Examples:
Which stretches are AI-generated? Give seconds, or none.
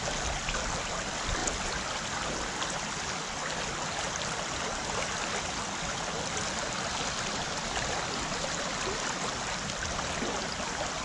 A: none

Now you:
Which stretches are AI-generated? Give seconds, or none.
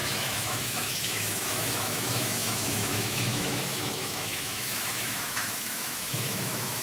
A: 0.0-6.8 (autoencoder, DAC-VAE)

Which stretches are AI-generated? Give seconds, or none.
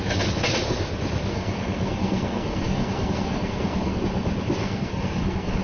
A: 1.3-4.0 (codec, SNAC); 4.6-5.6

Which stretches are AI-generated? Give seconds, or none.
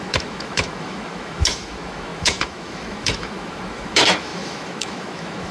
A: 0.0-5.5 (autoencoder, DAC-VAE)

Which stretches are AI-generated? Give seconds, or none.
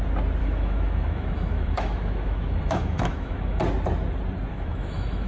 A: 0.4-3.6 (autoencoder, DAC-VAE); 4.5-5.3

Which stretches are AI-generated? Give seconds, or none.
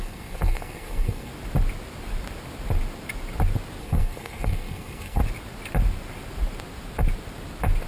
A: 0.0-1.3 (codec, SNAC); 3.8-5.2